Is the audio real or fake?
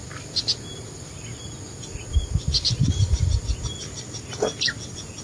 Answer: real